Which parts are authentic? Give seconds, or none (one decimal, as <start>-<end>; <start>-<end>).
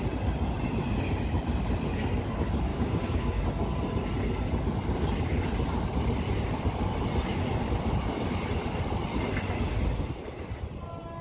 0.0-2.7; 3.4-11.2